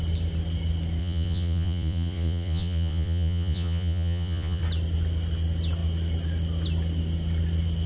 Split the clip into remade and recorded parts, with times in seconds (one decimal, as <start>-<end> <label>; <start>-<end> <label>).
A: 0.0-1.0 recorded; 1.0-4.6 remade; 4.6-7.9 recorded

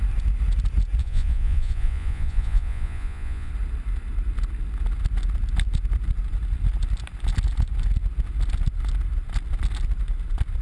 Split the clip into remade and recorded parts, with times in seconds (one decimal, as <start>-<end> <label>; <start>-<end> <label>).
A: 0.0-1.0 recorded; 1.0-3.5 remade; 3.5-10.6 recorded